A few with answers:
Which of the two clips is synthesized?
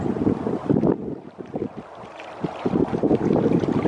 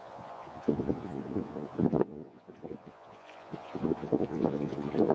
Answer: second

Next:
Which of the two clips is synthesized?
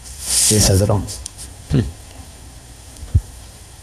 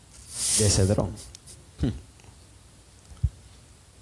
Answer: first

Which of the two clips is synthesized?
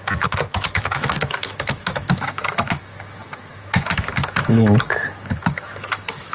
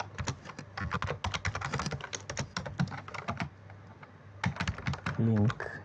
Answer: first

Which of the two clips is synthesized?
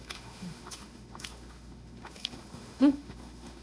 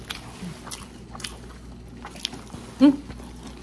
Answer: first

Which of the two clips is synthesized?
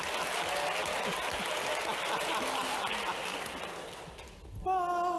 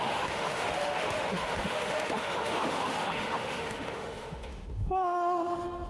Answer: second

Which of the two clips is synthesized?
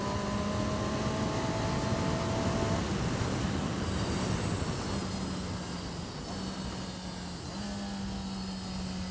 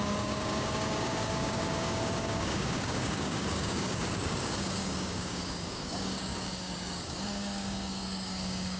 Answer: second